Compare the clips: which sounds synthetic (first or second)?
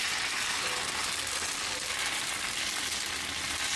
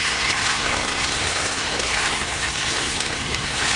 second